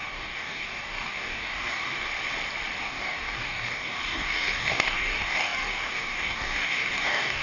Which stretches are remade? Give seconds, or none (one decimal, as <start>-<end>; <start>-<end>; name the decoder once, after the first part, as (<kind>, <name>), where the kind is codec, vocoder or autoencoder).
0.0-2.1 (codec, DAC); 2.8-7.4